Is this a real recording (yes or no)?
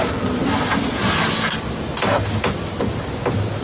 yes